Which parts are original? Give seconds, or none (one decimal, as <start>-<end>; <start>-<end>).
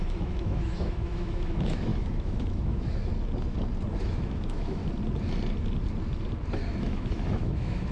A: 3.1-4.0; 4.8-6.8